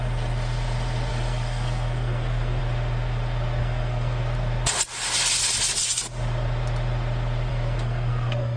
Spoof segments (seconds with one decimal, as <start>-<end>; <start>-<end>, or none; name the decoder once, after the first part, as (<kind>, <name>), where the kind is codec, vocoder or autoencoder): 1.1-2.6 (codec, SNAC); 3.6-4.2; 7.5-8.6